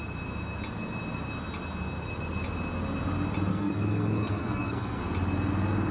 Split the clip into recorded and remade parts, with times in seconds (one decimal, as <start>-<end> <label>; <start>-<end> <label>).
0.0-3.5 recorded; 3.5-5.0 remade; 5.0-5.9 recorded